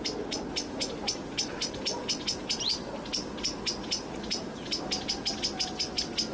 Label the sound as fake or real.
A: real